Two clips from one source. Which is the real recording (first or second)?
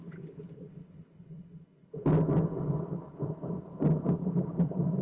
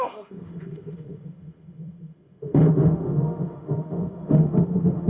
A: first